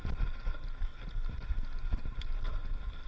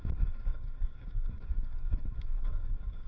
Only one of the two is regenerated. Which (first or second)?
second